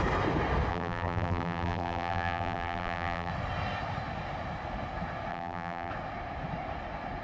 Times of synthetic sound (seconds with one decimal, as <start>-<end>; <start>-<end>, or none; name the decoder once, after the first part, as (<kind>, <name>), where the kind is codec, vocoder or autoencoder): 0.7-3.3 (vocoder, BigVGAN v2); 5.3-5.9